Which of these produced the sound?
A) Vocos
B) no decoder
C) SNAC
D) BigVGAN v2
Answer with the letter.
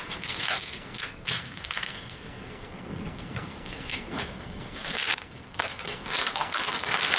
C